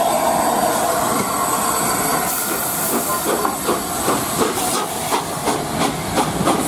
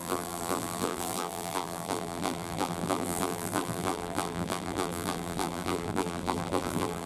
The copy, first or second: second